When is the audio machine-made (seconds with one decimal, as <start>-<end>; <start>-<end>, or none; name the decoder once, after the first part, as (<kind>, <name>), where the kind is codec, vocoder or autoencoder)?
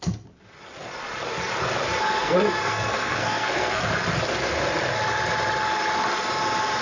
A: 2.2-3.8 (codec, SNAC)